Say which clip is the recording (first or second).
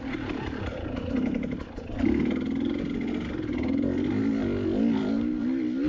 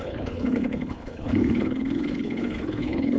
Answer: first